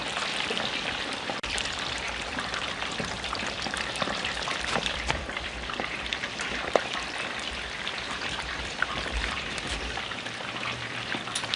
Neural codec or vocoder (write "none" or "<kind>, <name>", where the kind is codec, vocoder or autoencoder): vocoder, BigVGAN v2